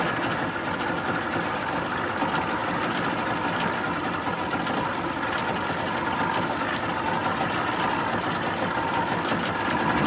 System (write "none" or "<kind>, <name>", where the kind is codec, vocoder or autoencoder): none